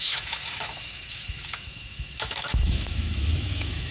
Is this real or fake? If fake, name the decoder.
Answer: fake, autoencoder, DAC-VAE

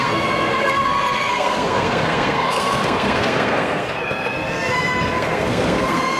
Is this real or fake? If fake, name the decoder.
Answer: fake, codec, SNAC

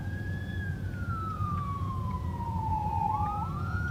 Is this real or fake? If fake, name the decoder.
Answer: fake, vocoder, Vocos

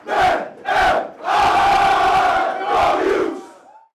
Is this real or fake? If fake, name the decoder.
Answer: real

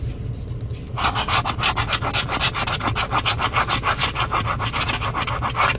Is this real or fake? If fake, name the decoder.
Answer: real